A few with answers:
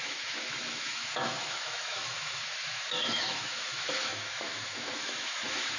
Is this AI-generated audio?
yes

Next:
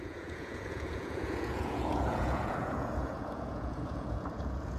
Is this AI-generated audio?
yes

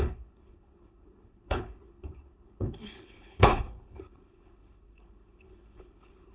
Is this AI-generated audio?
yes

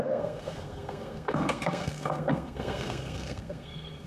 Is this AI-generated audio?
yes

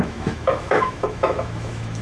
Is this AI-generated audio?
yes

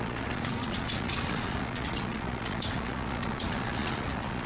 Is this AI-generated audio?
yes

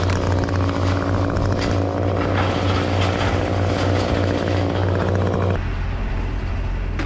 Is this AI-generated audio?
no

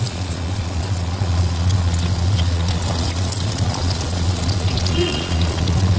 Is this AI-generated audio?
yes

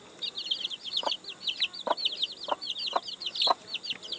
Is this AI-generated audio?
no